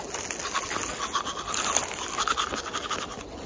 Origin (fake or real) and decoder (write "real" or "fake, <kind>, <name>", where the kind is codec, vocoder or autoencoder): real